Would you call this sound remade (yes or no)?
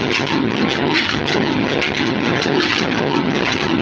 yes